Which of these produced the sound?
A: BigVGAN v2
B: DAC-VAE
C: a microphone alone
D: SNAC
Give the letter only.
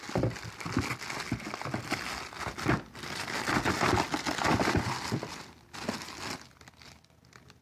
C